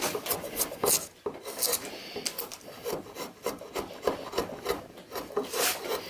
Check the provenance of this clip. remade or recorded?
recorded